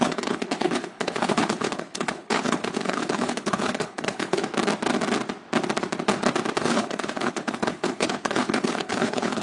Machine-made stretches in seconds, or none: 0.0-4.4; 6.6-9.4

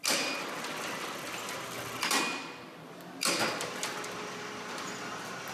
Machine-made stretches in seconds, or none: none